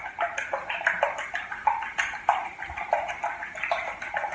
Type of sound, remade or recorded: recorded